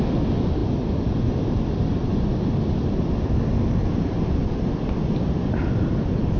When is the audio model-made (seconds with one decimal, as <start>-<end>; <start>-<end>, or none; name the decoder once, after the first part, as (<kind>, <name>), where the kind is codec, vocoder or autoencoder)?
none